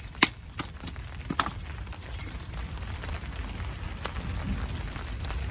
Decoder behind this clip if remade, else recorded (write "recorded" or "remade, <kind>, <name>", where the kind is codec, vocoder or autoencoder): remade, vocoder, BigVGAN v2